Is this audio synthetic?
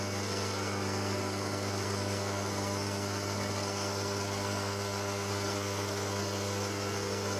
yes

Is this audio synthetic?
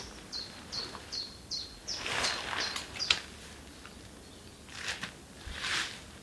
no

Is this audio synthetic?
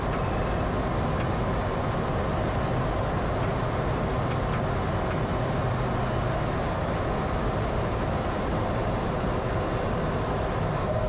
no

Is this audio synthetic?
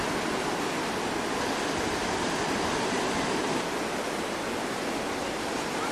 no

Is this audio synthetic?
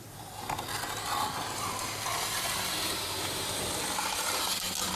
no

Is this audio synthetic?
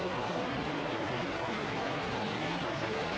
yes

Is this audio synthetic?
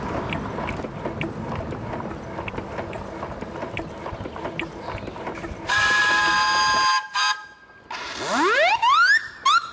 no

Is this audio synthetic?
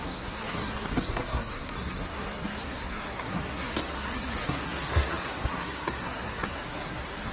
yes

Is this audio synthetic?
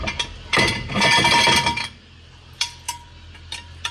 no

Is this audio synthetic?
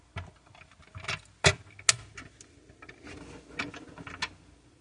no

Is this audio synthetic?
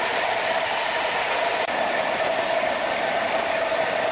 no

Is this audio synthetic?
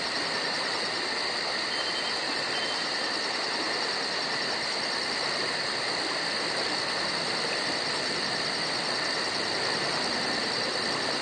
no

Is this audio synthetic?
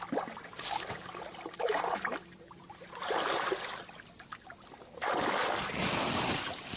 no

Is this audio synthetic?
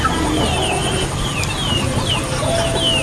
no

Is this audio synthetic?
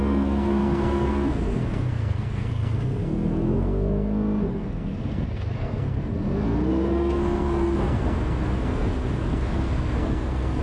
yes